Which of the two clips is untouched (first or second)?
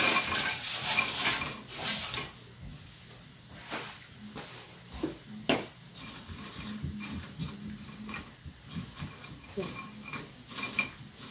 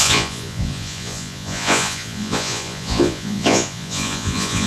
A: first